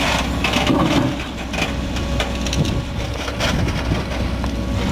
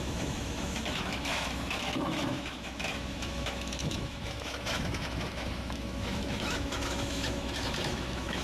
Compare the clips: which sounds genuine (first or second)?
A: first